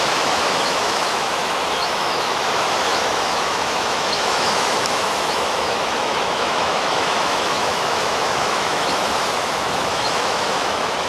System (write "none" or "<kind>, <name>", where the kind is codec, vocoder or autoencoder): autoencoder, DAC-VAE